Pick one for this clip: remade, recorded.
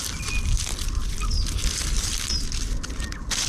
recorded